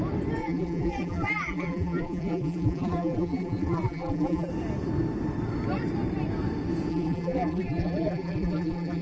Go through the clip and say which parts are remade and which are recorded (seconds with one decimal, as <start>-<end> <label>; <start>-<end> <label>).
0.0-0.4 recorded; 0.4-4.5 remade; 4.5-6.9 recorded; 6.9-9.0 remade